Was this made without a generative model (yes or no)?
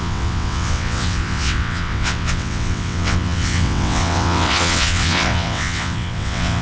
no